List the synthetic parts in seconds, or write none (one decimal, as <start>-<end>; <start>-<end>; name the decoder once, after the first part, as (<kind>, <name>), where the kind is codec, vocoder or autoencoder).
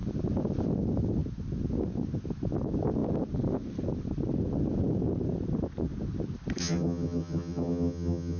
6.6-8.4 (vocoder, HiFi-GAN)